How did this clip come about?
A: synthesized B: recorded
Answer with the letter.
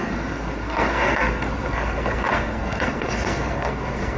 A